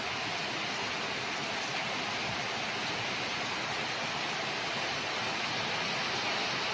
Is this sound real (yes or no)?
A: yes